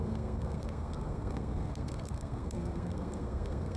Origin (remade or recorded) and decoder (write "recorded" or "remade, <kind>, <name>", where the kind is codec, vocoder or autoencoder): remade, codec, SNAC